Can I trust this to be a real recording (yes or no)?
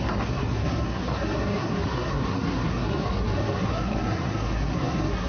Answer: no